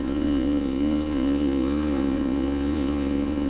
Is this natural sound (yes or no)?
no